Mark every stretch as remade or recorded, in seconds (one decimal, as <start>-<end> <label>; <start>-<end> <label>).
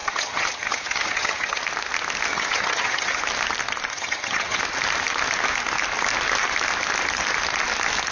0.0-1.6 remade; 1.6-2.3 recorded; 2.3-3.2 remade; 3.2-3.9 recorded; 3.9-4.6 remade; 4.6-8.1 recorded